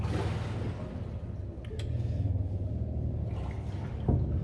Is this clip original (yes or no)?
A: yes